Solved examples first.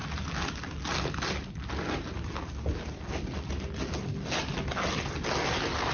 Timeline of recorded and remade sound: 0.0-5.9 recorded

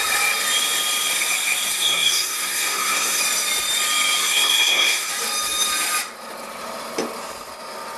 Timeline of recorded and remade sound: 0.0-1.7 recorded; 1.7-3.2 remade; 3.2-4.2 recorded; 4.2-5.1 remade; 5.1-8.0 recorded

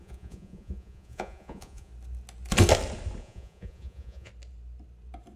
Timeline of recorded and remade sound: 0.0-1.9 remade; 1.9-3.2 recorded; 3.2-4.3 remade; 4.3-5.4 recorded

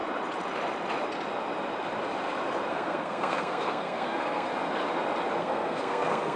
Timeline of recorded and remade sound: 0.0-2.7 recorded; 2.7-4.5 remade; 4.5-5.4 recorded; 5.4-6.4 remade